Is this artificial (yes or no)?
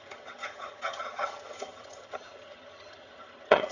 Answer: yes